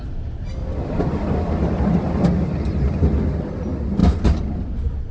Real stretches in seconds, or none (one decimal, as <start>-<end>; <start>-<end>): 0.0-0.6; 2.2-5.1